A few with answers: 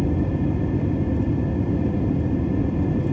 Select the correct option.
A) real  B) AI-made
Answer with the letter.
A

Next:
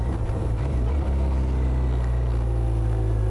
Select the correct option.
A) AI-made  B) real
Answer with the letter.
B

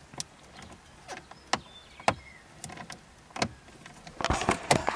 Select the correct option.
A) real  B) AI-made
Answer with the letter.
A